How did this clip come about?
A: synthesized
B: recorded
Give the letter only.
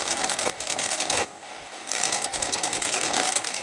A